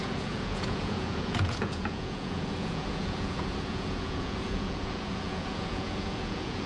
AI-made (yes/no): yes